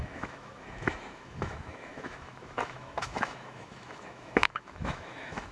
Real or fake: fake